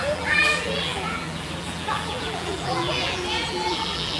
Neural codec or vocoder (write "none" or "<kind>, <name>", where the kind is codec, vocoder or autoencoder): vocoder, BigVGAN v2